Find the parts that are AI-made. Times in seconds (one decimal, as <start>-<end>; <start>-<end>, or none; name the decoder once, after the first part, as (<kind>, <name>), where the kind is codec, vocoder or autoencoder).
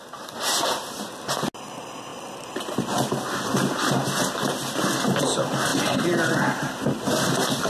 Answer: none